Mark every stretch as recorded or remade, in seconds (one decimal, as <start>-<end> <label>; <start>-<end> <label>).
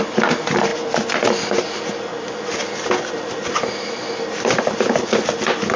0.0-5.8 recorded